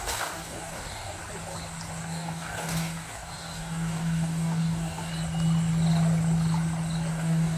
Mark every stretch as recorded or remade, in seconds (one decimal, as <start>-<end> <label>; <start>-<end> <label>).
0.0-1.2 remade; 1.2-2.0 recorded; 2.0-5.1 remade; 5.1-7.1 recorded; 7.1-7.6 remade